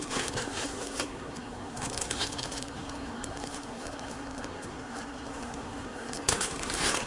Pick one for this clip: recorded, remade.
remade